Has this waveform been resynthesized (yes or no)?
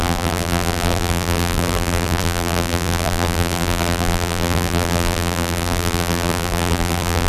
yes